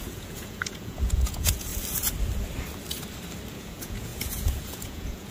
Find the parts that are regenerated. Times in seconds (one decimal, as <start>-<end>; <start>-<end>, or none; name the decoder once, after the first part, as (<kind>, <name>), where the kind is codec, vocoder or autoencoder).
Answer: 0.0-1.7 (vocoder, Vocos); 3.6-5.3